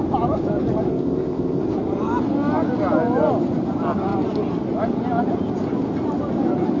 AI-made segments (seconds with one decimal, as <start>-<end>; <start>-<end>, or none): 0.9-1.6